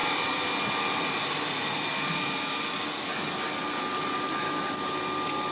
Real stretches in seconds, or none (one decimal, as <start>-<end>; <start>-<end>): 0.5-5.5